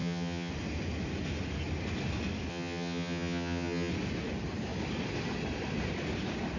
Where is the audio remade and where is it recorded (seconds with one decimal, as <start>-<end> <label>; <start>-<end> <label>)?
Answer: 0.0-0.5 remade; 0.5-2.5 recorded; 2.5-3.9 remade; 3.9-6.6 recorded